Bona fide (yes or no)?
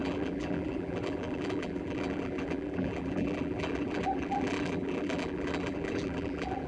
no